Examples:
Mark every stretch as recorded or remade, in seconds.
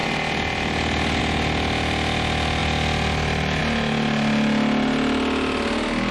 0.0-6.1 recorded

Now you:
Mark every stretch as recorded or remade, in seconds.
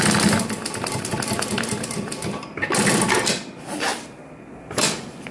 0.0-5.3 recorded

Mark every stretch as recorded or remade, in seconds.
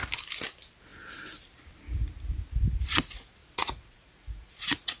0.0-3.4 recorded; 3.4-5.0 remade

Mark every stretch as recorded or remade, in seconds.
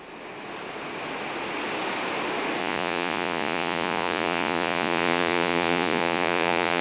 0.0-2.6 recorded; 2.6-6.8 remade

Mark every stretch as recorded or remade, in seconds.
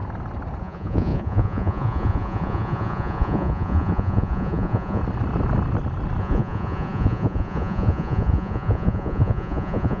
0.0-0.6 recorded; 0.6-5.0 remade; 5.0-6.2 recorded; 6.2-10.0 remade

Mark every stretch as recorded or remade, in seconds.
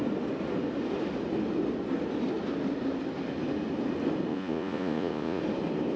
0.0-4.3 recorded; 4.3-5.4 remade; 5.4-6.0 recorded